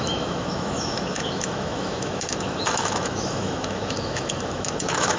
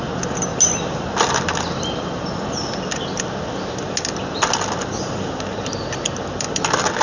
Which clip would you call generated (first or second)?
first